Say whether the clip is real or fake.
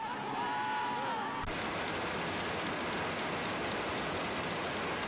real